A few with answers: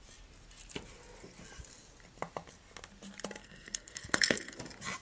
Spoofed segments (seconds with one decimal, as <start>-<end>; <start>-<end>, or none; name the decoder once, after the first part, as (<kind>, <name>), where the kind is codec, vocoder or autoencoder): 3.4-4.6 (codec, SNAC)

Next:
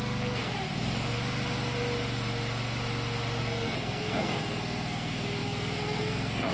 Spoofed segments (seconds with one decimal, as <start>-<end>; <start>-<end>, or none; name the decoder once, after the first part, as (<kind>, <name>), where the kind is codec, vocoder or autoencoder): 0.0-0.5 (codec, SNAC); 3.4-6.5

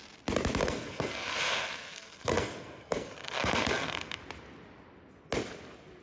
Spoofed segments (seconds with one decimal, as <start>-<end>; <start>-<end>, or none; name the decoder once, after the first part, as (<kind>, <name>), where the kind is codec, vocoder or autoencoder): 0.6-4.2 (codec, SNAC)

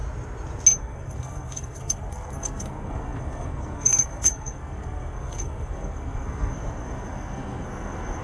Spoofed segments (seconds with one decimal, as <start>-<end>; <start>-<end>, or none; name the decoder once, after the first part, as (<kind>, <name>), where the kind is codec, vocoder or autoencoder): 0.8-8.2 (codec, SNAC)

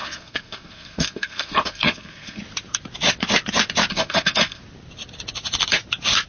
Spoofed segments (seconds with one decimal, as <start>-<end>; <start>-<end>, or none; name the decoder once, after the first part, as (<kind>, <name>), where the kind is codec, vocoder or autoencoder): 0.0-2.4 (codec, SNAC); 3.9-4.6